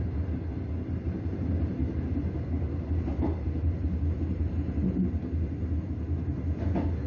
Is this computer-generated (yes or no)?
no